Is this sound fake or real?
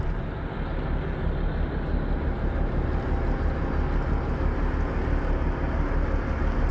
real